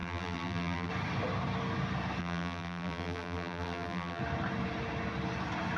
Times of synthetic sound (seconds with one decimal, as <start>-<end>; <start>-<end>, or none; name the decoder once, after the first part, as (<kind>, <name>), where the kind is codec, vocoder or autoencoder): 0.0-0.9 (vocoder, BigVGAN v2); 2.2-4.2